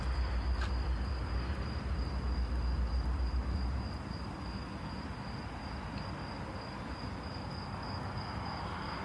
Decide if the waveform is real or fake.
real